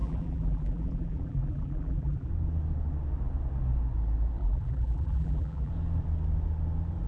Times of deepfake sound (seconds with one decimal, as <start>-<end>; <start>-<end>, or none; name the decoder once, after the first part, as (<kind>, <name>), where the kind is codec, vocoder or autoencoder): 0.0-2.3 (vocoder, BigVGAN v2); 4.4-5.7